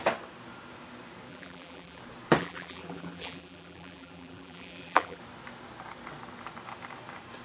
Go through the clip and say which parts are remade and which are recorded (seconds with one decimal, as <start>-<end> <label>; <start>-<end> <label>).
0.0-1.3 recorded; 1.3-2.0 remade; 2.0-2.4 recorded; 2.4-5.2 remade; 5.2-7.4 recorded